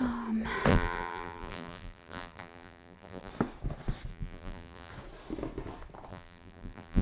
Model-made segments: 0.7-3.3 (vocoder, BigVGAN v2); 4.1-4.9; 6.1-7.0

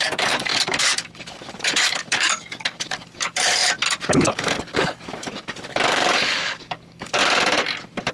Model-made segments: 0.0-3.6 (codec, DAC); 4.1-7.2

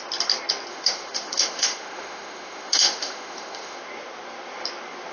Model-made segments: 0.7-3.8 (autoencoder, DAC-VAE)

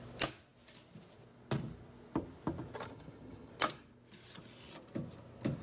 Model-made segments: 2.9-3.5 (vocoder, HiFi-GAN)

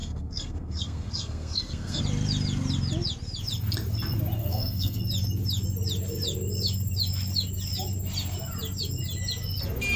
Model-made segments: 0.0-2.0 (codec, SNAC); 4.4-5.0